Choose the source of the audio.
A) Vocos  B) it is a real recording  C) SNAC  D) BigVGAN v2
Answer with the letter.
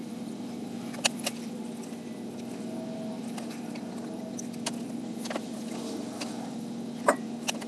B